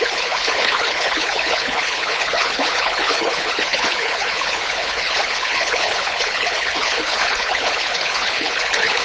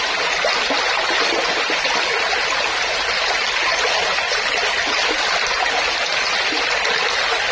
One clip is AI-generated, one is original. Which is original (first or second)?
second